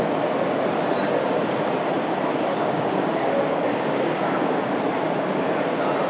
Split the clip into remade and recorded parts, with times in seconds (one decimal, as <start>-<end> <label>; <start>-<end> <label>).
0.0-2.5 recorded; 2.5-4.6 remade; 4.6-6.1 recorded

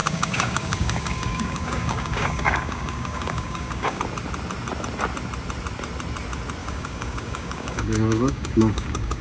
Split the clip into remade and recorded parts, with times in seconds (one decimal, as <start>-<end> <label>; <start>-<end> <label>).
0.0-4.0 remade; 4.0-6.6 recorded; 6.6-9.2 remade

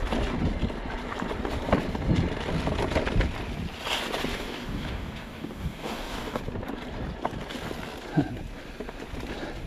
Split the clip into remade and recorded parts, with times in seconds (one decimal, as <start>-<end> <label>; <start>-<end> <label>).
0.0-4.3 recorded; 4.3-6.4 remade; 6.4-9.7 recorded